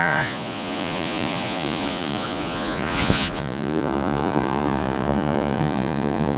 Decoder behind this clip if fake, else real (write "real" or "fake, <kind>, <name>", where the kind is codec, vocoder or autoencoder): fake, vocoder, Vocos